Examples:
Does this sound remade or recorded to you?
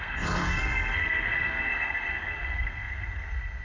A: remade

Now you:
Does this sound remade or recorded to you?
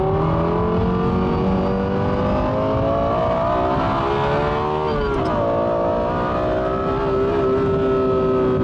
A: recorded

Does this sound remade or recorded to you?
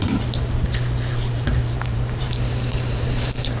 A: remade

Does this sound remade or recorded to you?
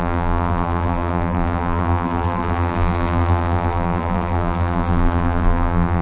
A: remade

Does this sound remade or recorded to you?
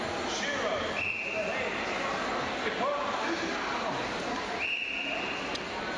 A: recorded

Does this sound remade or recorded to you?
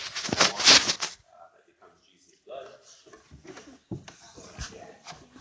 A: recorded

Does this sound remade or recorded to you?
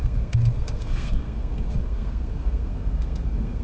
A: remade